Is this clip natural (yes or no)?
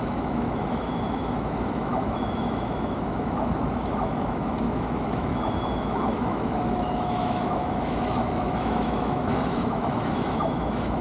no